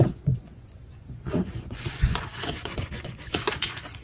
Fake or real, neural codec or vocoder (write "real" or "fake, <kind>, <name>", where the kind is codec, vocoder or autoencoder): fake, vocoder, Vocos